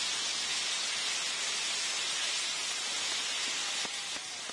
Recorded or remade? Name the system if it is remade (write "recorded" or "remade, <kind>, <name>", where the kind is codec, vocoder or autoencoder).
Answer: recorded